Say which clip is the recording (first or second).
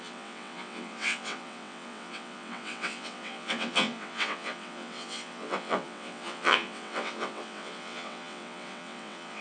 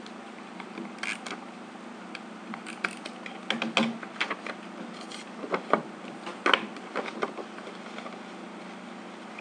second